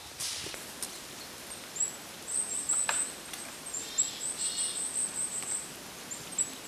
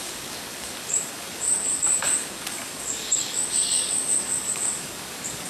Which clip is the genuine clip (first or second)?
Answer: first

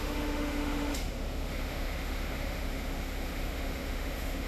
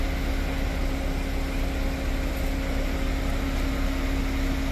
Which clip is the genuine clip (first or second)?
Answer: second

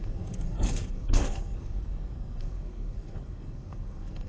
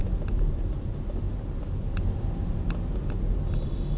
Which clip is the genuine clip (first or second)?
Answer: second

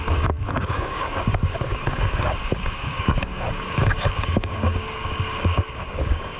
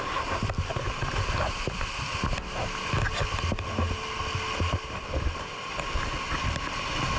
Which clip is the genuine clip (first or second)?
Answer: second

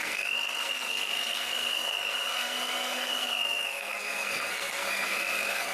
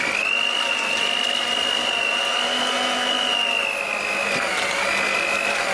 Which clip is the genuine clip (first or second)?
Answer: second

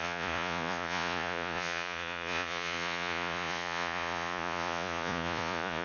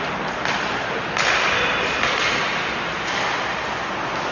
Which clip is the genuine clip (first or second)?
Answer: second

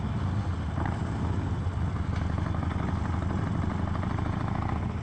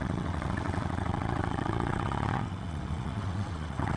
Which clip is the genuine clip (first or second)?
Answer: first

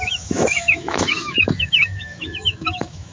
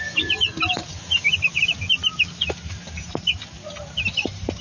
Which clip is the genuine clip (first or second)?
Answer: second